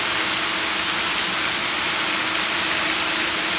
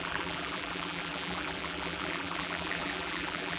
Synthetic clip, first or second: second